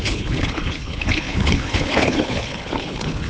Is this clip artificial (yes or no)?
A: yes